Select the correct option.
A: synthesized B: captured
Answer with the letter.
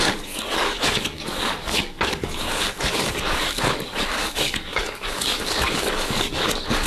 A